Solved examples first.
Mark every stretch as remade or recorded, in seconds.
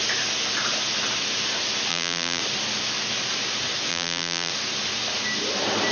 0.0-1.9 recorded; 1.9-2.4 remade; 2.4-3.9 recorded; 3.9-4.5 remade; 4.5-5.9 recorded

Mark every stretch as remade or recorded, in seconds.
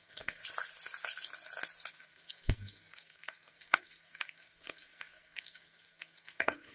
0.0-0.4 remade; 0.4-1.9 recorded; 1.9-6.7 remade